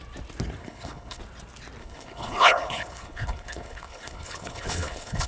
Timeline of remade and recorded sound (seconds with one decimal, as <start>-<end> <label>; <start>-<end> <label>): 0.0-0.6 recorded; 0.6-1.2 remade; 1.2-1.8 recorded; 1.8-5.3 remade